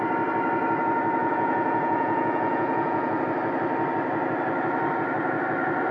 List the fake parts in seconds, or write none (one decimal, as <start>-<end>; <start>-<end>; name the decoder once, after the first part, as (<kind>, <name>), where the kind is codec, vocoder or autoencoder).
1.2-3.2 (vocoder, Vocos)

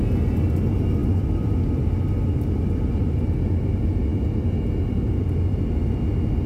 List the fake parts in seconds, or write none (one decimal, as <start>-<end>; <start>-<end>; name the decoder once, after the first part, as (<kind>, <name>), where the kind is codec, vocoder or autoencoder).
none

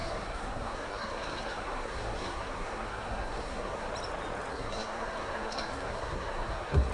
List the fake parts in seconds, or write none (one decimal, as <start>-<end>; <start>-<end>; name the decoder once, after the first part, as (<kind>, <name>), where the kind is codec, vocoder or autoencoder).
0.0-3.9 (codec, SNAC); 4.5-6.9

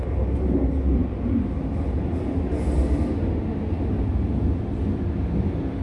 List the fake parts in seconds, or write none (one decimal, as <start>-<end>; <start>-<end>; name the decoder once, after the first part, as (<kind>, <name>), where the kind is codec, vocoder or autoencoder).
none

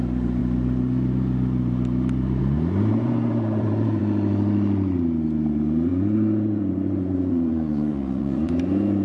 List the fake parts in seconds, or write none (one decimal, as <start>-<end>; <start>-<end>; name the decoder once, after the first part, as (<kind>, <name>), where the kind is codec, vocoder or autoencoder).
2.9-4.0 (vocoder, Vocos); 5.9-8.5

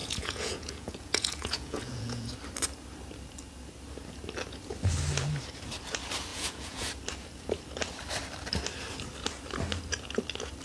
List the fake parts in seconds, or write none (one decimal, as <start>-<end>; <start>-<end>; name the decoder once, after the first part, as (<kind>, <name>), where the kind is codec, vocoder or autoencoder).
0.0-2.3 (vocoder, Vocos); 6.3-6.9

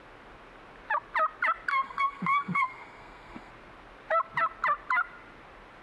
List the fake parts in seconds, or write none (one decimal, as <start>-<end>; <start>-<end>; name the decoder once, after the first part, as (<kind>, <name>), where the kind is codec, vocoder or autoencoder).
1.7-3.5 (codec, SNAC)

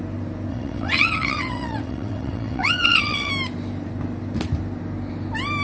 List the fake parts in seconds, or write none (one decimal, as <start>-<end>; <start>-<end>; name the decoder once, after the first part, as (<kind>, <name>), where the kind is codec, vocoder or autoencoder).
0.5-3.3 (vocoder, WaveNeXt)